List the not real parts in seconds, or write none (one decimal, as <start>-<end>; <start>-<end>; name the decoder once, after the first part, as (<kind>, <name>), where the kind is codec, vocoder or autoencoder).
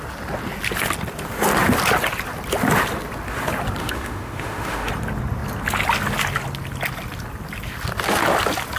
3.8-4.9 (autoencoder, DAC-VAE)